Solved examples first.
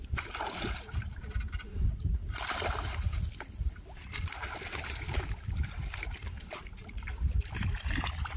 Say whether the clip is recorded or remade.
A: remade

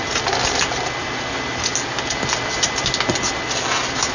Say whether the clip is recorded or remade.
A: recorded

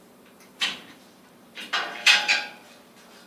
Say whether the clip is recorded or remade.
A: remade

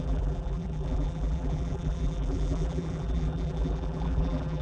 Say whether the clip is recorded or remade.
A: remade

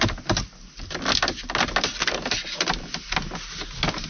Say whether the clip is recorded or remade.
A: recorded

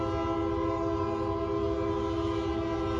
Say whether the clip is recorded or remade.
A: recorded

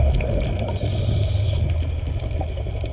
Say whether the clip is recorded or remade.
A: recorded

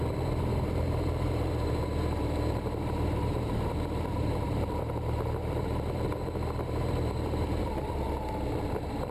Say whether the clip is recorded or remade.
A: remade